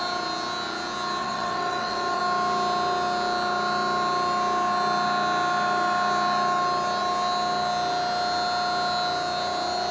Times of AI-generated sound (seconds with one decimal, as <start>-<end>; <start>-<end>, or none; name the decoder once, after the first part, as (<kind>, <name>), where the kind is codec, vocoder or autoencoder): 1.2-2.2 (vocoder, WaveNeXt)